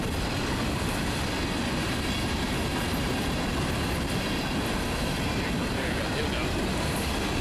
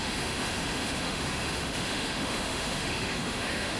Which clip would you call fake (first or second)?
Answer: second